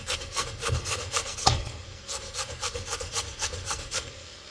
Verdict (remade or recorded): remade